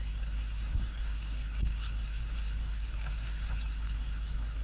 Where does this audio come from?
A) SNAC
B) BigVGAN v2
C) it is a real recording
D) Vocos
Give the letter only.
A